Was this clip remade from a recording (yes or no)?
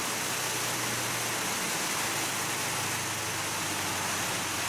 no